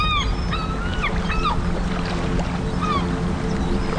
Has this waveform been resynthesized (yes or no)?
no